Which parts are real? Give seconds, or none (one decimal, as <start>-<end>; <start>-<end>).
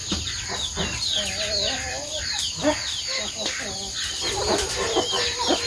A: 0.0-5.7